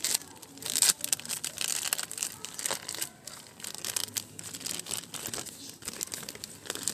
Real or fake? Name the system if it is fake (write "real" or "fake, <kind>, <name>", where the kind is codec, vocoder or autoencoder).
real